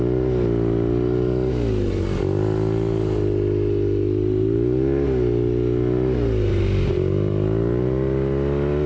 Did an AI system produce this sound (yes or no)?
no